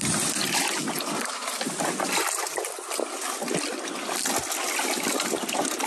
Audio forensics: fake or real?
real